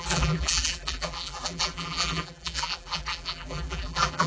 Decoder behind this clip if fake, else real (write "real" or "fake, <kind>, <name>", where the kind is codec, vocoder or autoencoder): fake, vocoder, BigVGAN v2